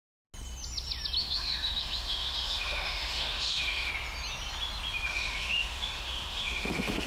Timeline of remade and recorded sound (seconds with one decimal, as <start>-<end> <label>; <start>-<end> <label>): 0.0-1.2 recorded; 1.2-3.9 remade; 3.9-5.1 recorded; 5.1-7.1 remade